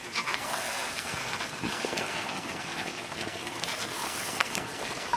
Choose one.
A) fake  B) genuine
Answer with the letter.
A